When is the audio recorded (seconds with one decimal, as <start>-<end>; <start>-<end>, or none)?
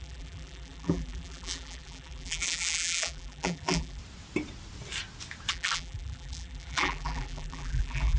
4.0-5.5